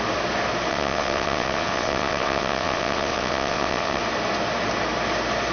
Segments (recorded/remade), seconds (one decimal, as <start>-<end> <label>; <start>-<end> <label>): 0.0-0.7 recorded; 0.7-4.0 remade; 4.0-5.5 recorded